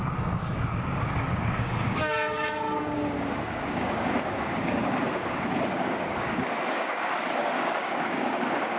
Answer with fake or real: fake